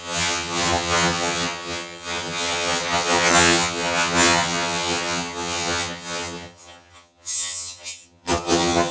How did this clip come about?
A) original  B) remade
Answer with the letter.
B